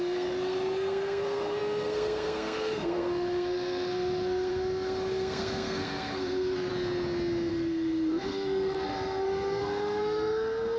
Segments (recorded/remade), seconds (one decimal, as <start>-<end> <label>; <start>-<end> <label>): 0.0-6.7 remade; 6.7-7.5 recorded; 7.5-10.8 remade